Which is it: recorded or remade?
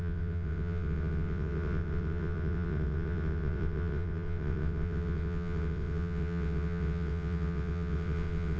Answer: remade